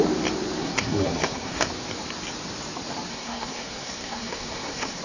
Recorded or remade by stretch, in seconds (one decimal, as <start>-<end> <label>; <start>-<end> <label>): 0.0-0.6 recorded; 0.6-1.7 remade; 1.7-3.1 recorded; 3.1-5.0 remade